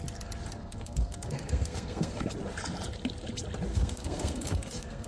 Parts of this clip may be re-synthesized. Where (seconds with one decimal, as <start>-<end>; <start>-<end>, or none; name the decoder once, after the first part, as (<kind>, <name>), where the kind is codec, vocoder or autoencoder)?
0.6-2.3 (codec, SNAC); 3.7-5.1